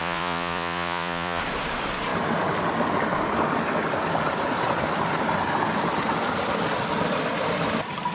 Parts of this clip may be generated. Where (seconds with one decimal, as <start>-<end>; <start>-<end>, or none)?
0.0-1.4